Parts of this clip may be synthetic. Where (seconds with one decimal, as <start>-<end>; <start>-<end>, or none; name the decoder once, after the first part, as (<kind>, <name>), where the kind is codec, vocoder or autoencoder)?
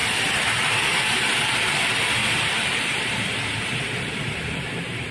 0.0-1.5 (vocoder, BigVGAN v2); 2.2-5.1